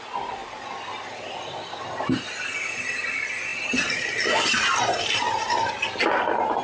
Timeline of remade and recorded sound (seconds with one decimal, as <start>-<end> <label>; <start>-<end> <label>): 0.0-6.6 recorded